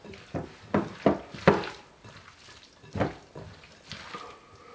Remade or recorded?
recorded